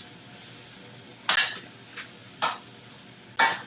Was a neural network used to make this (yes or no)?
no